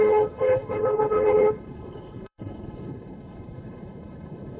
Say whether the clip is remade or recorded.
remade